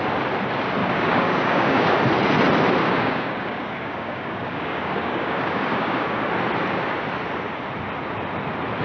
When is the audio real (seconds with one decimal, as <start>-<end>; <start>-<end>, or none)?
0.0-0.8; 2.0-2.8; 6.3-8.8